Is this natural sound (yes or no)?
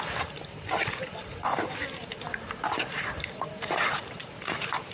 no